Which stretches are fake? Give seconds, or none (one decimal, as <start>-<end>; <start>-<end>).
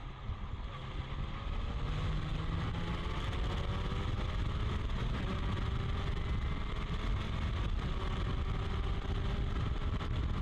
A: 0.0-0.8; 7.1-8.0